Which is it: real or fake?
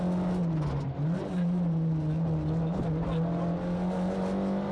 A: real